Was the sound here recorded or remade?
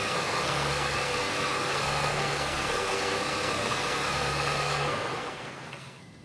remade